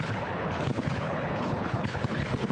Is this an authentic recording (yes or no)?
no